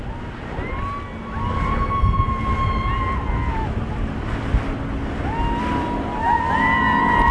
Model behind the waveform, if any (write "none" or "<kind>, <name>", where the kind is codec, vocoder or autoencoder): none